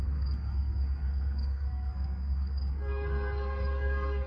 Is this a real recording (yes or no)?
no